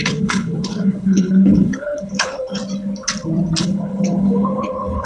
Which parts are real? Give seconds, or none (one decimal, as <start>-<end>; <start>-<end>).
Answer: 2.6-3.6